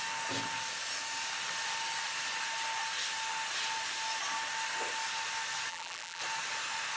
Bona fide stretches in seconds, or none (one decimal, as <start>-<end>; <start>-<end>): 0.0-5.7; 6.2-7.0